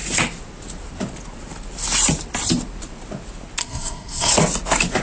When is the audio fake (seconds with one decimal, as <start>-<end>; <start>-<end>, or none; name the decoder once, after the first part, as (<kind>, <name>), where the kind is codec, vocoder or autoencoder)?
3.6-4.3 (codec, SNAC)

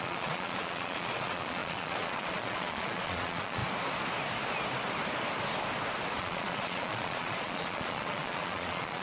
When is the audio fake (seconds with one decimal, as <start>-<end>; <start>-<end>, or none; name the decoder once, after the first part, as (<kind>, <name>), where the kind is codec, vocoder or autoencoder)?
0.0-3.6 (vocoder, Vocos); 6.2-9.0

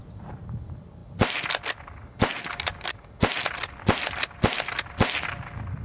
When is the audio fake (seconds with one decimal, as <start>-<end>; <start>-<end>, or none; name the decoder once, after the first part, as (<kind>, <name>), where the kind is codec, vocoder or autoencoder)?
none

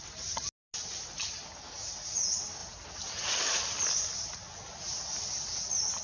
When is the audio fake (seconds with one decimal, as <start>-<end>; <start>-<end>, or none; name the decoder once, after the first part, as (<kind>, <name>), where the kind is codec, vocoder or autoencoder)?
none

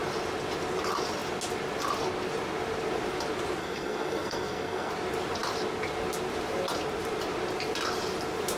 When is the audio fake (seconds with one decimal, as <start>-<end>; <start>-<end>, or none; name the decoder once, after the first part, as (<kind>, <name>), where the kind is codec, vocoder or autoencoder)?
3.6-4.9 (codec, SNAC)